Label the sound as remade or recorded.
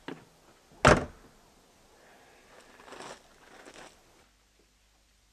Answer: recorded